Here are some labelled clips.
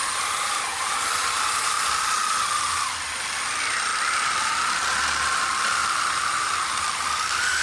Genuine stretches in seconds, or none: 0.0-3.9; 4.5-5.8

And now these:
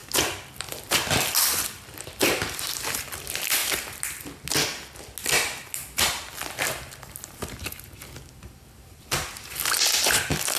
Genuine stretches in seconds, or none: 3.6-8.4

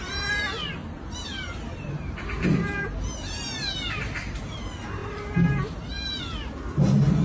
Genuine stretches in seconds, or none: 0.0-0.8; 4.6-5.0; 6.2-7.2

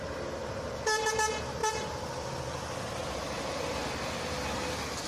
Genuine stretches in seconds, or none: 0.0-1.6; 4.2-5.1

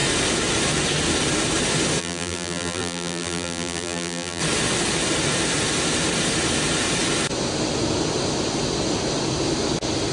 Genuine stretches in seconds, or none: 0.0-2.0; 4.4-10.1

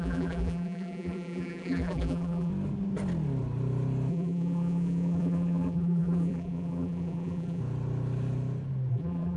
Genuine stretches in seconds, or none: 2.5-4.1; 7.6-8.9

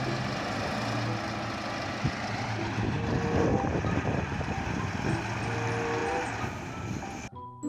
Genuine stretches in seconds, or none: 0.0-3.5; 4.6-7.7

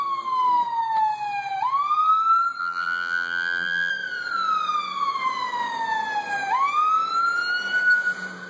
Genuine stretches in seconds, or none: 0.0-2.6; 3.9-8.5